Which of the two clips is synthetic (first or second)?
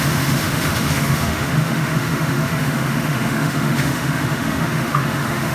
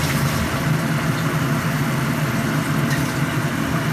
first